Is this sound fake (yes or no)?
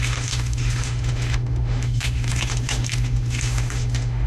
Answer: yes